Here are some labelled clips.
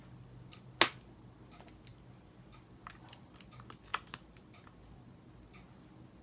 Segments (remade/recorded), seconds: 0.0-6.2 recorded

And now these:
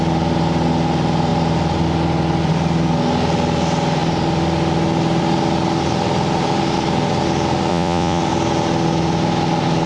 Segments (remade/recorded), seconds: 0.0-7.7 recorded; 7.7-8.2 remade; 8.2-9.9 recorded

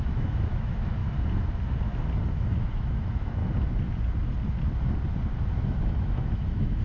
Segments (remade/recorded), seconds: 0.0-1.0 remade; 1.0-2.3 recorded; 2.3-3.4 remade; 3.4-5.6 recorded; 5.6-6.8 remade

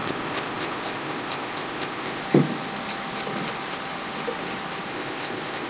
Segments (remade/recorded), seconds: 0.0-2.2 remade; 2.2-4.9 recorded; 4.9-5.7 remade

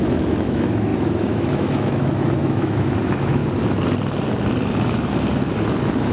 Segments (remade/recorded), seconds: 0.0-3.4 remade; 3.4-6.1 recorded

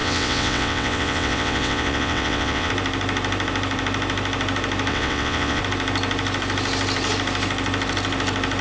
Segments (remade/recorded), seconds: 0.0-2.7 remade; 2.7-4.9 recorded; 4.9-5.6 remade; 5.6-8.6 recorded

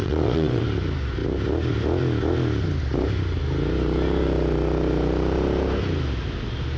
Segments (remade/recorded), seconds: 0.0-0.6 remade; 0.6-6.8 recorded

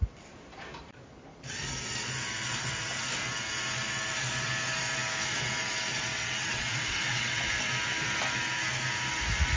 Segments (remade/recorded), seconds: 0.0-6.1 recorded; 6.1-7.4 remade; 7.4-9.6 recorded